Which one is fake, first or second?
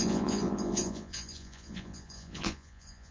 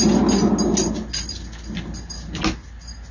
first